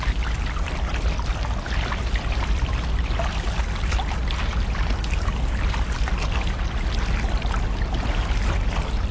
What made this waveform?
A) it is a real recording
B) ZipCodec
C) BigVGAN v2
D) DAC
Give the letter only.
A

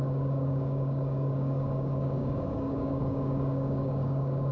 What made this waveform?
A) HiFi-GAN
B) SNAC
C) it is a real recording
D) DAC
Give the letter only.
D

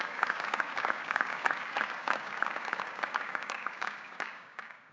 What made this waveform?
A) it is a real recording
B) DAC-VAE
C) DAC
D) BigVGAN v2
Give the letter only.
C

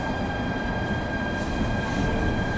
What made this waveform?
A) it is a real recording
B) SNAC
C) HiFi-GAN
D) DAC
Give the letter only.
A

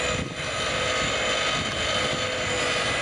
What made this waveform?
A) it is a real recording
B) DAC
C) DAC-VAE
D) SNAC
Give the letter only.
A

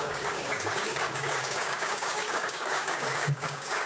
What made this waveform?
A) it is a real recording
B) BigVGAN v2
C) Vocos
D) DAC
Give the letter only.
D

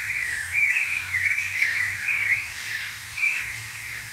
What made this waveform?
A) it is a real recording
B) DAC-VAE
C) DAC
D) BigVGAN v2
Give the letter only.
C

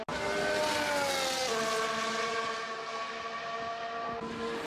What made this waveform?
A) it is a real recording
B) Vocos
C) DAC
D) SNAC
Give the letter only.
A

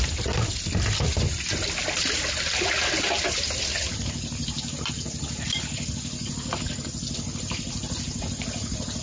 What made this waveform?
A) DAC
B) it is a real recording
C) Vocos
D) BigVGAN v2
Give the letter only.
B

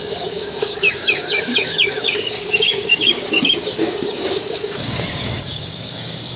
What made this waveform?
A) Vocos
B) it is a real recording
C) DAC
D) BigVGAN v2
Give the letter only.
C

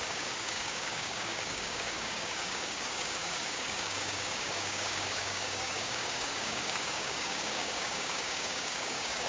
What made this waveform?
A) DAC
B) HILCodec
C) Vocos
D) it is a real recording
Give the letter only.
A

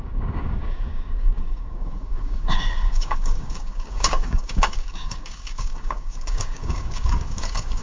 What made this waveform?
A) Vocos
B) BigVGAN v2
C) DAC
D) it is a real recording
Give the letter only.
C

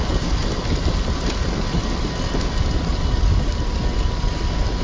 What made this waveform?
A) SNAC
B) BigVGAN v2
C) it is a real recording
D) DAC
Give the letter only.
C